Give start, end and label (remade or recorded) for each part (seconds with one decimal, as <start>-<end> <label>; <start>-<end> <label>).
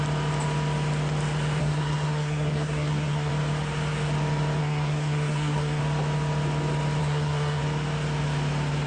0.0-1.6 recorded; 1.6-3.3 remade; 3.3-4.6 recorded; 4.6-5.8 remade; 5.8-7.0 recorded; 7.0-7.6 remade; 7.6-8.9 recorded